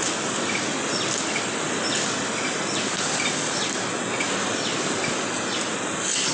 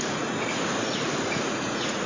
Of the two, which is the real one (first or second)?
first